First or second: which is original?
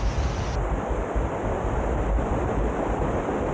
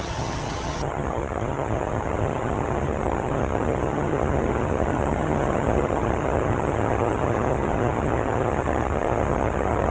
first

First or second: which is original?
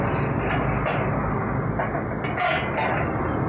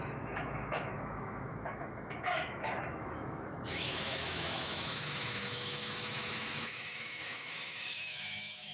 first